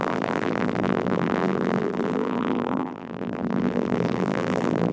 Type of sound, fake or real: fake